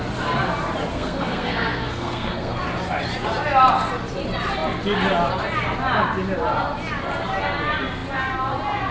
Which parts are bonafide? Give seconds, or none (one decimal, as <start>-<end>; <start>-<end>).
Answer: 0.0-0.9; 2.6-8.9